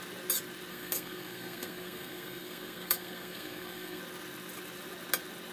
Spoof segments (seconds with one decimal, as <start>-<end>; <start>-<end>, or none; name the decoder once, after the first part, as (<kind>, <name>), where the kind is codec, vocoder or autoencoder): 0.7-4.0 (codec, SNAC)